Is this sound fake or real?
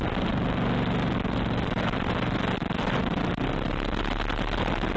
real